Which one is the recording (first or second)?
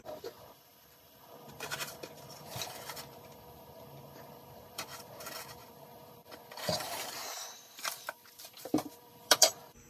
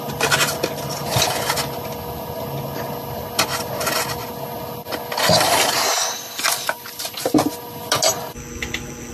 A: second